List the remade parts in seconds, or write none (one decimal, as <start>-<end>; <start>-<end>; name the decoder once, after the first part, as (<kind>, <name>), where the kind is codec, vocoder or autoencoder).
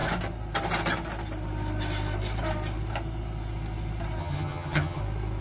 4.2-5.0 (vocoder, HiFi-GAN)